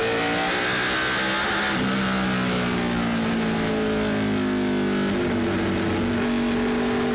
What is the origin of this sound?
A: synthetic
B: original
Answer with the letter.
B